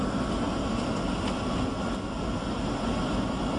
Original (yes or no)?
yes